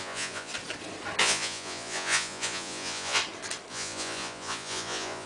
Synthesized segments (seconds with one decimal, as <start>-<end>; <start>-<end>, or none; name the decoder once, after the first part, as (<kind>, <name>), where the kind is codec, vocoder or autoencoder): 0.0-0.5 (vocoder, Vocos); 1.2-3.2; 3.7-5.3